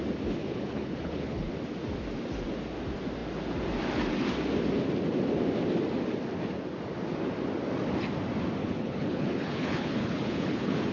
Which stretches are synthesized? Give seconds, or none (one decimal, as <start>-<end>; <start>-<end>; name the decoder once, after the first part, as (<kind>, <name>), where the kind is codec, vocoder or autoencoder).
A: 0.4-1.5 (codec, HILCodec); 8.6-10.9